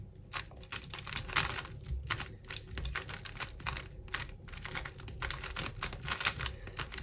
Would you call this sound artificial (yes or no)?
no